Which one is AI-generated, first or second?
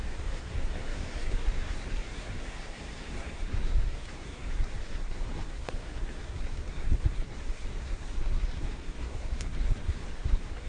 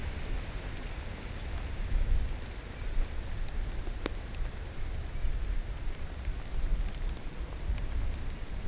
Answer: first